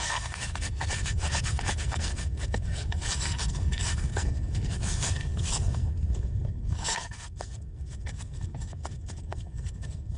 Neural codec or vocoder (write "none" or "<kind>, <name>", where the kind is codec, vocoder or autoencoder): codec, SNAC